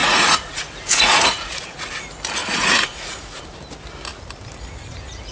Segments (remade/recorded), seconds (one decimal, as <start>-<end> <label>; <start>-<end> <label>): 0.0-1.9 remade; 1.9-2.4 recorded; 2.4-3.4 remade; 3.4-5.3 recorded